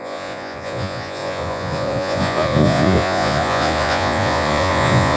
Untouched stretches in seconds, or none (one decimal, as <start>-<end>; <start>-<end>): none

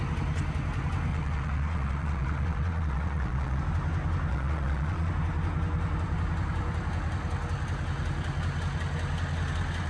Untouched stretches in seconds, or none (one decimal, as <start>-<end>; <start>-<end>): 0.0-1.1; 3.6-4.3; 5.1-9.9

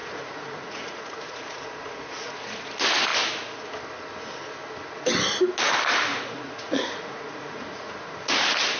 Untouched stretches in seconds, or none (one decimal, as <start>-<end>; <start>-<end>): 2.7-6.1; 8.3-8.8

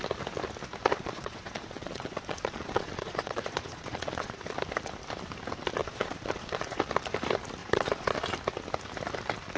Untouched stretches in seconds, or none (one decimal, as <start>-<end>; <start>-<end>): 0.0-0.9; 4.4-5.8; 6.8-7.6; 8.2-9.6

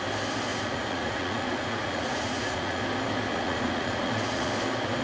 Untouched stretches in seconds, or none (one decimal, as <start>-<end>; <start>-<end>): 0.0-0.5; 2.8-3.3; 4.5-5.0

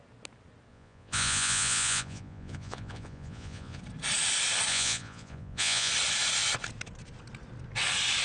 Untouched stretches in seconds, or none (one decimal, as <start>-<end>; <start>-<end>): 0.0-0.7; 3.8-4.7; 5.9-8.2

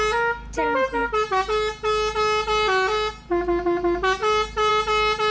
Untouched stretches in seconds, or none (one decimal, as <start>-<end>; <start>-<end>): 0.0-5.3